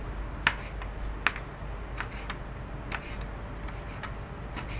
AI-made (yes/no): no